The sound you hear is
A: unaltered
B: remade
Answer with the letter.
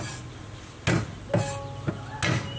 A